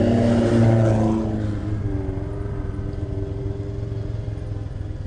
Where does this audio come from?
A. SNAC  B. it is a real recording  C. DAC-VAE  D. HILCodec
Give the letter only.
B